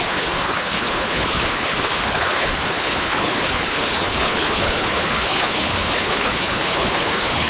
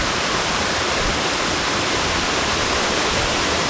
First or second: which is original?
second